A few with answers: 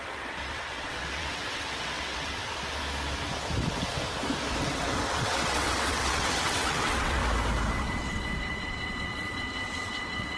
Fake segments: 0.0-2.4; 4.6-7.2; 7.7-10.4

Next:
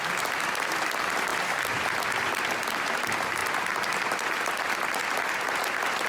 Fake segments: none

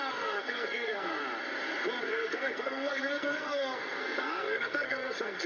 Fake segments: 0.0-1.2; 2.0-5.5

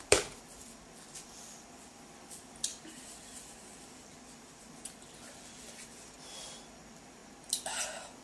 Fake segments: 0.0-7.2

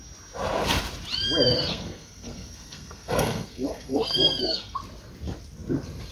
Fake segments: 1.5-4.8

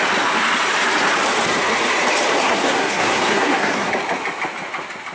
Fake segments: 2.4-3.9

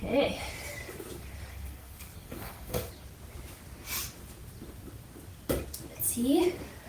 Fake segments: 1.5-2.9

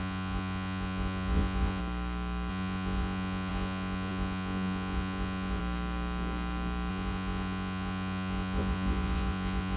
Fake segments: 0.0-1.8; 2.5-5.6; 6.9-9.8